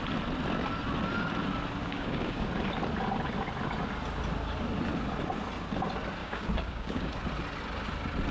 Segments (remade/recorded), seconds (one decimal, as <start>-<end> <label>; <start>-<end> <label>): 0.0-1.8 recorded; 1.8-2.5 remade; 2.5-6.2 recorded; 6.2-7.1 remade; 7.1-8.3 recorded